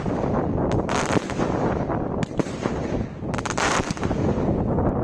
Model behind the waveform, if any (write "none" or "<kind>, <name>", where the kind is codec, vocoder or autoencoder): none